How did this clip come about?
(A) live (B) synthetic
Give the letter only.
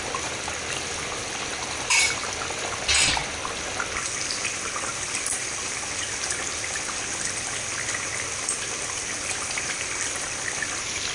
A